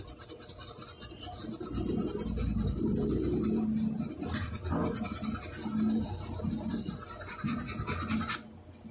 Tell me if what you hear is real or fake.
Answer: real